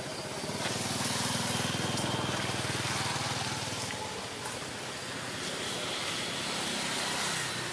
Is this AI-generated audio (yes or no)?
no